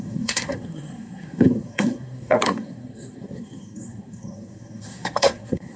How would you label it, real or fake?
fake